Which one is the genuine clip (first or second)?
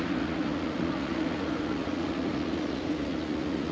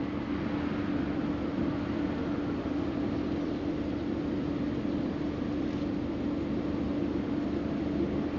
second